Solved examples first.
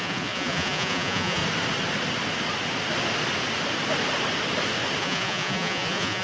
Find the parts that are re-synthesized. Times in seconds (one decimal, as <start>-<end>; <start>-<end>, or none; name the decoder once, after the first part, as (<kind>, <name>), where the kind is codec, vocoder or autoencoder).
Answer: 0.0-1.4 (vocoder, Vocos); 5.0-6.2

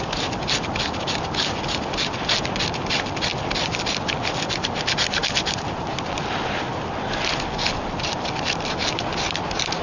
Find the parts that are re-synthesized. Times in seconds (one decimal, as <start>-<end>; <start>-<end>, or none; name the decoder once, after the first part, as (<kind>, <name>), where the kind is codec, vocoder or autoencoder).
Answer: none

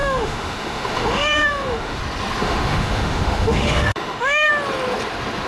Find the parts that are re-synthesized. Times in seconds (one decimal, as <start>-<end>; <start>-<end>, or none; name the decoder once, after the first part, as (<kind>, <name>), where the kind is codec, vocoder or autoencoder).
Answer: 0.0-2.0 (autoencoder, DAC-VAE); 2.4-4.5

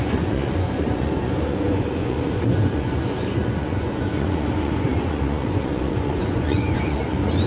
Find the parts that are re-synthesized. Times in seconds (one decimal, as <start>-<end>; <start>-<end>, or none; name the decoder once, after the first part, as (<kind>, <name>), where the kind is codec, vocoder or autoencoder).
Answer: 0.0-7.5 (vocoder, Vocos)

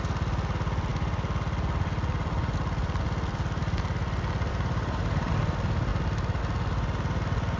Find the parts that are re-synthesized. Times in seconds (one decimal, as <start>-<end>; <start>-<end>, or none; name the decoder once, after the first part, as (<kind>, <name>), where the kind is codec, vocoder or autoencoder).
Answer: 4.5-5.3 (vocoder, BigVGAN v2)